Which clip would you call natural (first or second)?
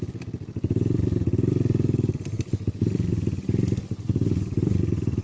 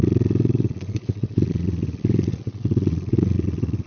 first